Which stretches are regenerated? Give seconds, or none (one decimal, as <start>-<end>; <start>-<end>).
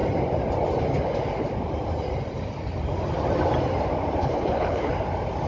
4.2-4.9